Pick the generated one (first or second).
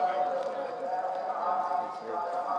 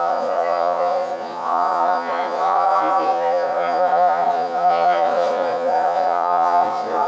second